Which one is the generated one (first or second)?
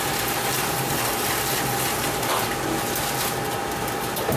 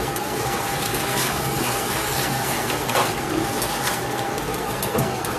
second